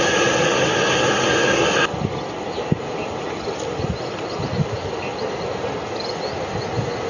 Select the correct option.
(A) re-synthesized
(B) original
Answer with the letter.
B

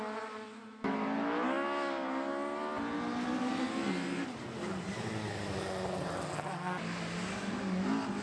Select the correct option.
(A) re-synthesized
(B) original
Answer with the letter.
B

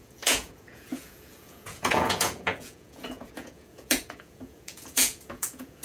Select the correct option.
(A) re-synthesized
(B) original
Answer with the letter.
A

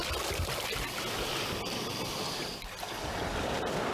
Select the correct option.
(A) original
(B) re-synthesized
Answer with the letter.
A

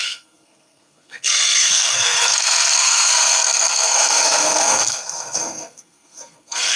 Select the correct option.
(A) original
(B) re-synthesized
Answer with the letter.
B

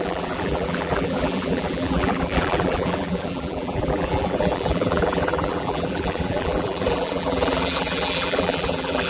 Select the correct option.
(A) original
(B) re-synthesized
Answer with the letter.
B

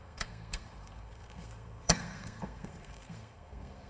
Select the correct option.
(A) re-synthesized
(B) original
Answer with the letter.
A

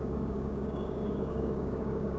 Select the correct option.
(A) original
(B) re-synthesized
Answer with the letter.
B